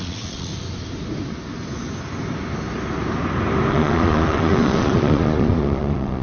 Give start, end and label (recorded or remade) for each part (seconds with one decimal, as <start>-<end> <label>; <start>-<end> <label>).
0.0-0.5 remade; 0.5-3.7 recorded; 3.7-6.2 remade